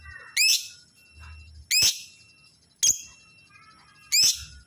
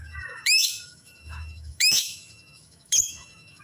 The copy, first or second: second